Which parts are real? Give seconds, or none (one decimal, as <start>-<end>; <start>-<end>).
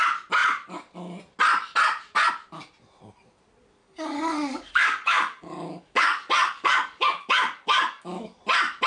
0.0-3.8; 8.4-8.9